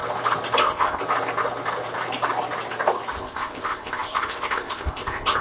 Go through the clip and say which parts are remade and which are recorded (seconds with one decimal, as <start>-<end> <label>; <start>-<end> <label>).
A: 0.0-0.6 recorded; 0.6-1.0 remade; 1.0-3.2 recorded; 3.2-5.4 remade

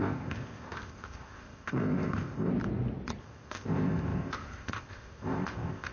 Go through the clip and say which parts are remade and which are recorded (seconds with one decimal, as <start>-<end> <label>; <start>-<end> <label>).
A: 0.0-2.5 remade; 2.5-3.2 recorded; 3.2-5.9 remade

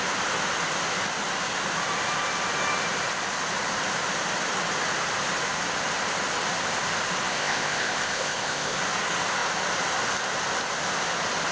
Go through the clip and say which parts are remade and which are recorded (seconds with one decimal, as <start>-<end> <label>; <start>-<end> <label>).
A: 0.0-7.3 recorded; 7.3-8.8 remade; 8.8-11.5 recorded